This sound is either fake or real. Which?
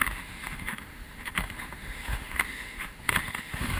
fake